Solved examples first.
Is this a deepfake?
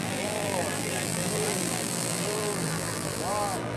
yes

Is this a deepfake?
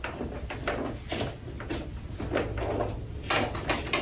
no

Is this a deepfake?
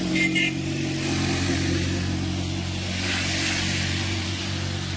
no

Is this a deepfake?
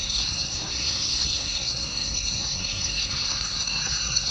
yes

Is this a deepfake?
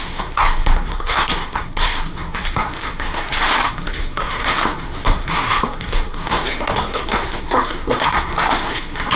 yes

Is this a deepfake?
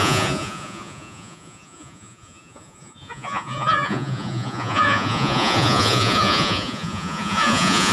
yes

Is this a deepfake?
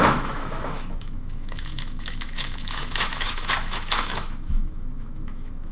yes